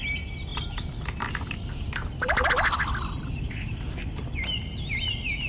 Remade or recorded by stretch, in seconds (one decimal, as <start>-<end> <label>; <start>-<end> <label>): 0.0-5.5 recorded